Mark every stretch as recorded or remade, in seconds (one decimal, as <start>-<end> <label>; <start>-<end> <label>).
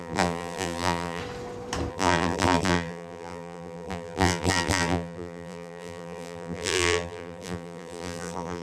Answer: 0.0-1.2 remade; 1.2-1.9 recorded; 1.9-8.6 remade